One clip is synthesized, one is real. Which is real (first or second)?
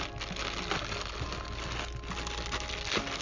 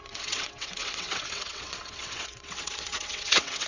first